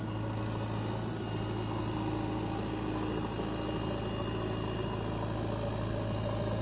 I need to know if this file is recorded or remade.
recorded